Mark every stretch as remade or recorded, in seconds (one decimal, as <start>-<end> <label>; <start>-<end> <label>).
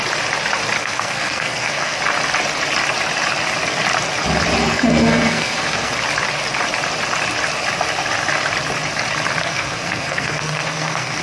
0.0-0.8 recorded; 0.8-2.0 remade; 2.0-4.6 recorded; 4.6-5.9 remade; 5.9-9.4 recorded; 9.4-11.2 remade